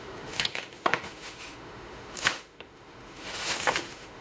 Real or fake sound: fake